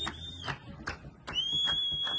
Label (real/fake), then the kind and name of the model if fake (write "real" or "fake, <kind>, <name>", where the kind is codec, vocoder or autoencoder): real